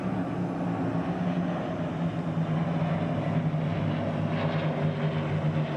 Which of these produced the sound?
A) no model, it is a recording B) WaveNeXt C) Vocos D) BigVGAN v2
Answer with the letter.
A